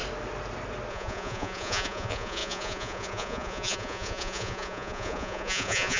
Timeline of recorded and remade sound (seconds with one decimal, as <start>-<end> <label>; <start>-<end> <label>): 0.0-0.9 recorded; 0.9-6.0 remade